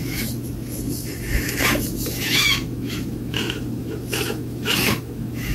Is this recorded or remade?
remade